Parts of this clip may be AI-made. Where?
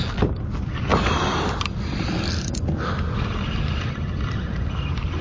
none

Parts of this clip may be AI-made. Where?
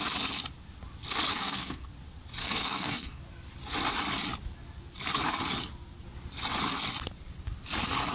1.3-1.9 (codec, SNAC); 2.4-3.2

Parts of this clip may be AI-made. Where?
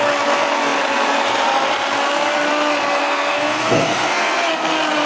3.0-4.5 (codec, SNAC)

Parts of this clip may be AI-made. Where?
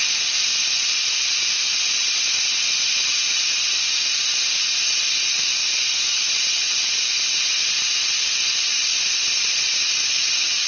none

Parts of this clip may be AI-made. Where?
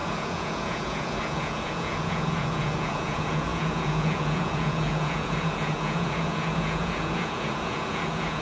0.0-8.4 (vocoder, Vocos)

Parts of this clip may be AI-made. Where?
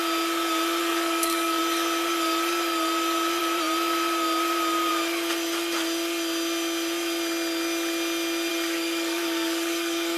0.8-1.6 (codec, DAC); 8.5-10.2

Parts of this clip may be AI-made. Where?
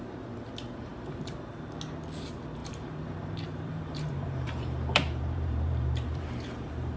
2.6-7.0 (vocoder, BigVGAN v2)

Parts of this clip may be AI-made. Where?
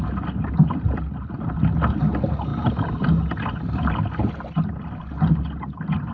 none